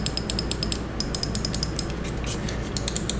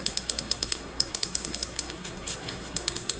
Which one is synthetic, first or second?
second